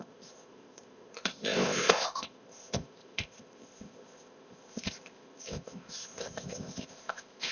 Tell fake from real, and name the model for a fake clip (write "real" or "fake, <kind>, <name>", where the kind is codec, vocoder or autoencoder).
fake, codec, ZipCodec